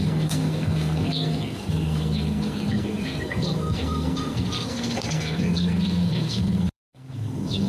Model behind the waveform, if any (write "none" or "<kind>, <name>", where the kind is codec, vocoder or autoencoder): codec, SNAC